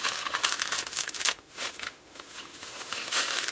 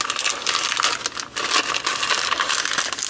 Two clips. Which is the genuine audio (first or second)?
second